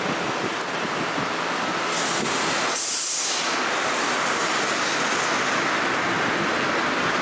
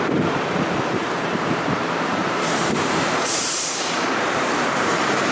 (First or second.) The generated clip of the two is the second